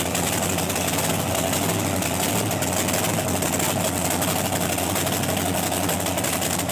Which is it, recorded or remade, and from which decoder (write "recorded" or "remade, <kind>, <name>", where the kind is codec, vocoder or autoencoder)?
recorded